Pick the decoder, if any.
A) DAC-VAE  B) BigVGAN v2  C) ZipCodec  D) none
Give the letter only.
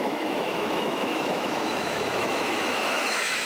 A